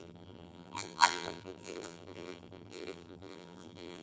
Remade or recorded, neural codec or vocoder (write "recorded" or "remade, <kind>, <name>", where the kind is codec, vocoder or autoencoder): remade, vocoder, BigVGAN v2